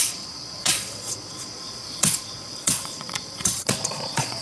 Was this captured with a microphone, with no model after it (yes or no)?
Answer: no